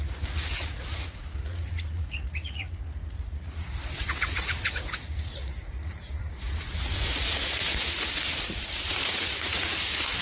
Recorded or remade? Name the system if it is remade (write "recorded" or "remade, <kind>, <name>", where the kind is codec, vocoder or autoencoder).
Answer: remade, vocoder, Vocos